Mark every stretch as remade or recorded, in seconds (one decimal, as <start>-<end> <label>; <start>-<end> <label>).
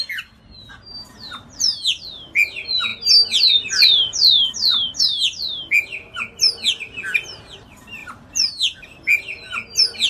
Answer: 0.0-10.1 recorded